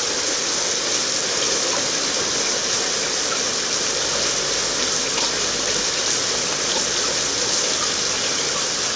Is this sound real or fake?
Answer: real